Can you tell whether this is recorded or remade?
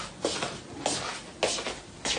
recorded